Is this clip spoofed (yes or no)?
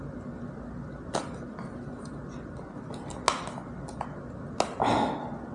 no